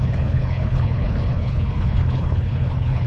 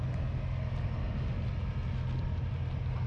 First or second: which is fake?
first